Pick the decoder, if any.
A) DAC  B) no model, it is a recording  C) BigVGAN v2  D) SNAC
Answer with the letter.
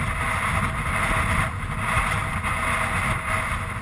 B